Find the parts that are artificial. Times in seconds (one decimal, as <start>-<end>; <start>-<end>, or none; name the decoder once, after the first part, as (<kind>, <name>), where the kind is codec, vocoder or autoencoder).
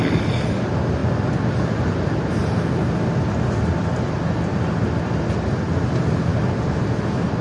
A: none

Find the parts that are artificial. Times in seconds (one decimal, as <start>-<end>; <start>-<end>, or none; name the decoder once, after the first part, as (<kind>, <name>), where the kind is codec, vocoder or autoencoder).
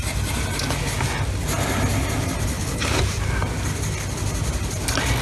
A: 2.5-3.0 (codec, HILCodec)